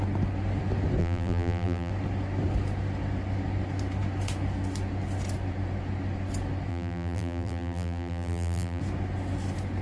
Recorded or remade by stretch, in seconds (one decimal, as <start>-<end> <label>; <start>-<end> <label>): 0.0-1.0 recorded; 1.0-1.9 remade; 1.9-6.7 recorded; 6.7-8.8 remade; 8.8-9.8 recorded